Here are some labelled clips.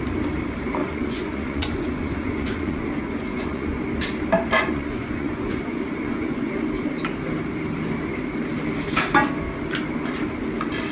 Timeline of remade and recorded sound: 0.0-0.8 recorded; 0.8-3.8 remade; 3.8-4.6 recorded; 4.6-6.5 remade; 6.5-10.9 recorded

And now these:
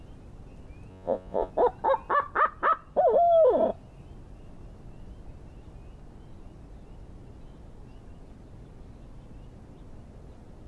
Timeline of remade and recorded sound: 0.0-0.9 recorded; 0.9-1.5 remade; 1.5-10.7 recorded